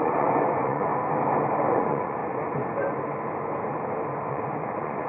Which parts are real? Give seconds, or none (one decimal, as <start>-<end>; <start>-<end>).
0.9-1.7; 2.2-4.3